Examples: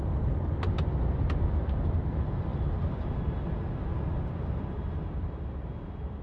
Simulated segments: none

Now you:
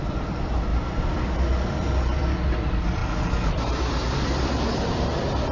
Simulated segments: none

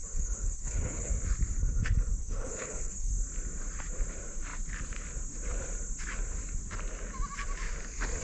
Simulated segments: 0.0-1.1 (codec, HILCodec); 2.2-3.1

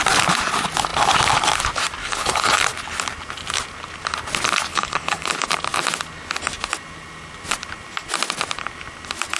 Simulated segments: 2.0-2.6 (codec, HILCodec); 4.7-5.3

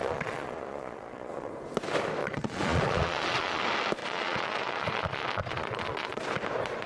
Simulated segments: 0.0-1.5 (vocoder, Vocos); 2.2-3.6; 4.0-6.2

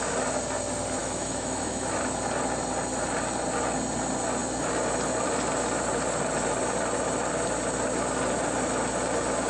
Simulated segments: 1.0-2.0 (autoencoder, DAC-VAE)

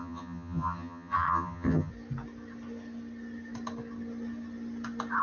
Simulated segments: 0.0-1.9 (vocoder, HiFi-GAN)